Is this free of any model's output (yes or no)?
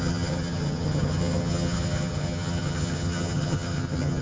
no